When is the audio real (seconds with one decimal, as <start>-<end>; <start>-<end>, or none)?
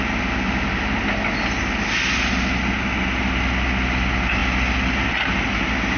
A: 0.0-6.0